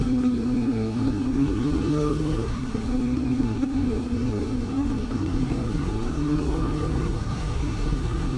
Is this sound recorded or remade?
remade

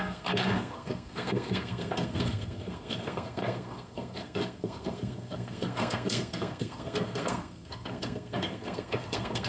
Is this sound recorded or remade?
remade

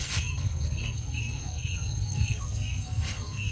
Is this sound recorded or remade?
remade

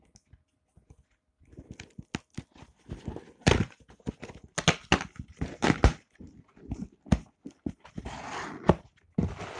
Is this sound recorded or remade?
recorded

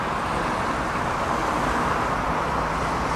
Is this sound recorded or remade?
recorded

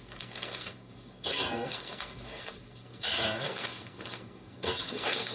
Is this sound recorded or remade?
remade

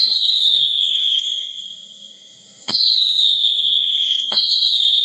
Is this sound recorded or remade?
remade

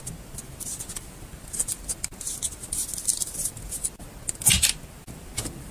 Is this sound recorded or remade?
recorded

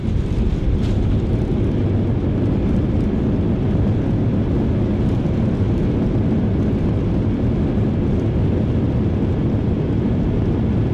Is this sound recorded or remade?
recorded